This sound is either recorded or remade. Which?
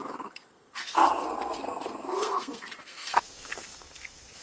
remade